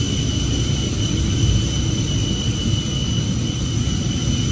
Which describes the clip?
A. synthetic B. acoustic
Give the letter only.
B